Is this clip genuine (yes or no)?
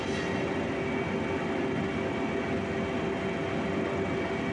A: yes